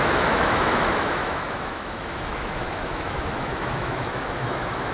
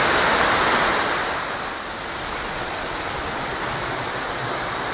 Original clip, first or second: second